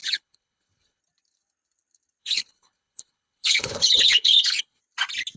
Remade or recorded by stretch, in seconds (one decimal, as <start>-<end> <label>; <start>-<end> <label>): 0.0-1.0 remade; 1.0-2.2 recorded; 2.2-4.8 remade; 4.8-5.4 recorded